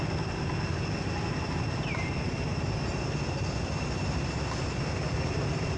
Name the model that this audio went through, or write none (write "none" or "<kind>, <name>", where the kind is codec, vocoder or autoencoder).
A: none